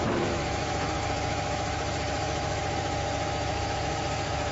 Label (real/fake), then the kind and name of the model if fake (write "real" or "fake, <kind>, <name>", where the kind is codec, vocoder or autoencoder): fake, autoencoder, DAC-VAE